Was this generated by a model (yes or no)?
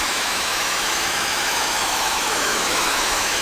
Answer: yes